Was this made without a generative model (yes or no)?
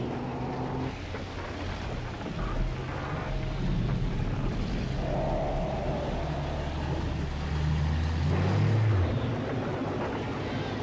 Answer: yes